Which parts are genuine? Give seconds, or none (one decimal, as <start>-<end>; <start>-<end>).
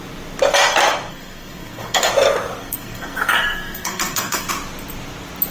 0.0-1.1; 2.1-2.6; 4.5-5.5